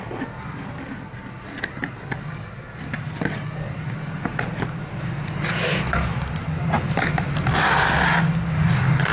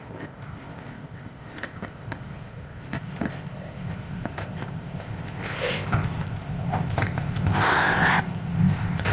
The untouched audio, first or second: first